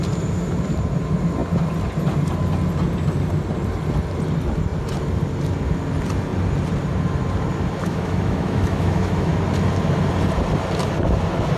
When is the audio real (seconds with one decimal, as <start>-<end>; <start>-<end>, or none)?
0.0-7.8; 9.3-11.6